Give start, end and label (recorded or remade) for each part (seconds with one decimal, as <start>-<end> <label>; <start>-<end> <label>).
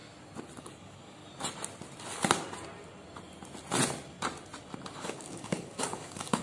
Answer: 0.0-0.6 recorded; 0.6-1.2 remade; 1.2-5.0 recorded; 5.0-6.4 remade